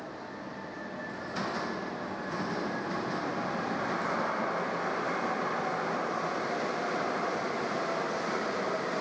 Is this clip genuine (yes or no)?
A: yes